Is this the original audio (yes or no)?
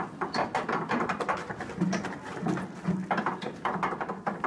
yes